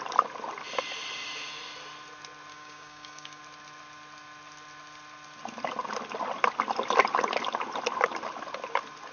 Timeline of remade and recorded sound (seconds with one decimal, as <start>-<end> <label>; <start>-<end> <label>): 0.0-2.5 recorded; 2.5-3.4 remade; 3.4-9.1 recorded